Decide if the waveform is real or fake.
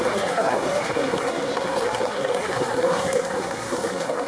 fake